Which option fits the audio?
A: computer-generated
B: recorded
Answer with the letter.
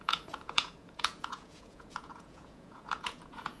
A